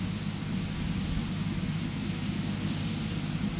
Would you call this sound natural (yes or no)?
yes